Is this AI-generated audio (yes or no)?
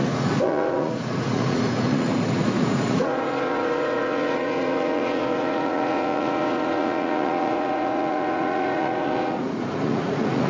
yes